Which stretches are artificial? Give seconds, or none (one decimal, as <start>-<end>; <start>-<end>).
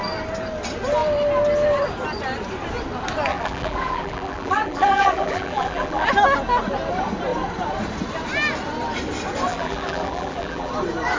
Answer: 3.3-6.1; 9.5-10.7